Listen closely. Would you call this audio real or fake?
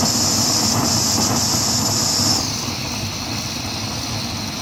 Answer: real